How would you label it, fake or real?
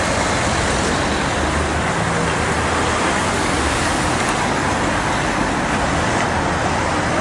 real